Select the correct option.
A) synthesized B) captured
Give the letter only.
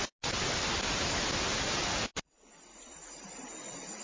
B